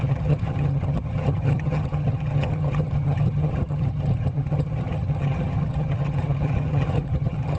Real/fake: fake